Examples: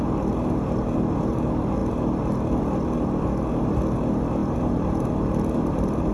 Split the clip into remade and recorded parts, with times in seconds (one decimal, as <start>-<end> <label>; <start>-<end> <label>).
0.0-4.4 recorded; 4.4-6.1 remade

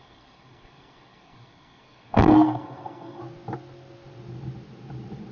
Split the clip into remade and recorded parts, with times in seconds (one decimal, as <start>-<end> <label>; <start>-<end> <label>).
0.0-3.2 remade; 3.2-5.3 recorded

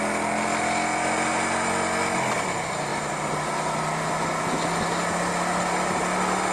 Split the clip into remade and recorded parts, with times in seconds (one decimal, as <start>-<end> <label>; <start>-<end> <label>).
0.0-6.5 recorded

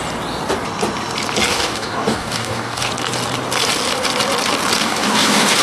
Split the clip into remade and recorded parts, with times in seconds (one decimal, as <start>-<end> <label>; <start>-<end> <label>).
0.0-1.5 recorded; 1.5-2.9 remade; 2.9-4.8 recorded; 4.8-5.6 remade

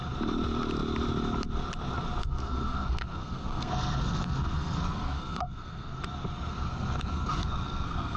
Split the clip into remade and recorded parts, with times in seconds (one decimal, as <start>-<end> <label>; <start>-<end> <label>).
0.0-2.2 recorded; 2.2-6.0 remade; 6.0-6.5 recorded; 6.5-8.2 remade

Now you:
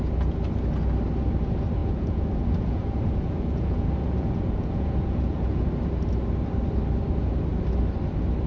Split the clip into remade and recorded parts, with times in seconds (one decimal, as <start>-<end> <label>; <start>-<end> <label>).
0.0-1.8 recorded; 1.8-5.7 remade; 5.7-8.5 recorded